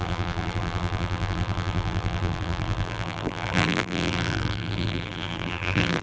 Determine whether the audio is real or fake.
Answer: fake